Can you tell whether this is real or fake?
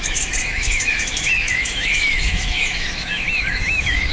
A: fake